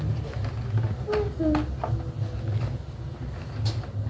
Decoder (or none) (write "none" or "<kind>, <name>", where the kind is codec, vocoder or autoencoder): none